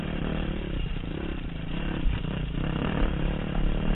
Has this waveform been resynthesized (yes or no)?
yes